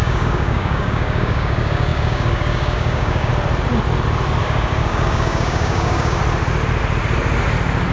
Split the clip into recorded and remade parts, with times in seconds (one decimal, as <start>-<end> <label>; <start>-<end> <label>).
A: 0.0-3.3 remade; 3.3-4.4 recorded; 4.4-6.2 remade; 6.2-7.9 recorded